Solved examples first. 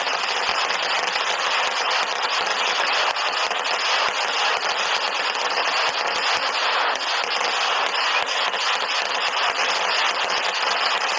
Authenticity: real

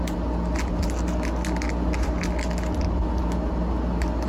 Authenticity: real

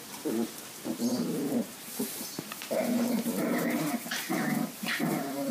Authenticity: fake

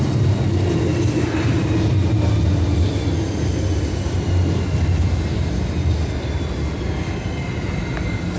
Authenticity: real